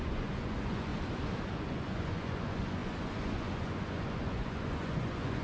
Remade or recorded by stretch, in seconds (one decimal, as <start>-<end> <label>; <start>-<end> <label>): 0.0-0.9 remade; 0.9-1.5 recorded; 1.5-5.4 remade